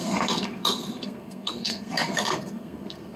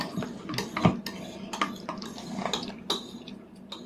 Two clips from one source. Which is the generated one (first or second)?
first